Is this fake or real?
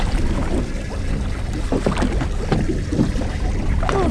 real